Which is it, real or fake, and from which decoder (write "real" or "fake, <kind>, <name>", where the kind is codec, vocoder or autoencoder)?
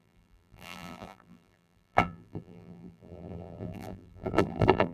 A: fake, vocoder, BigVGAN v2